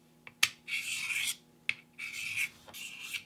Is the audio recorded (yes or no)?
yes